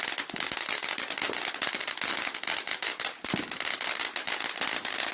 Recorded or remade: recorded